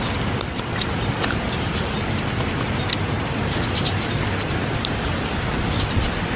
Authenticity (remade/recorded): recorded